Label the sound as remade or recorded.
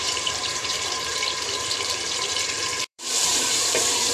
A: remade